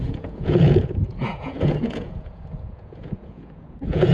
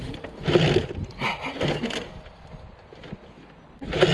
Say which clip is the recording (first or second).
second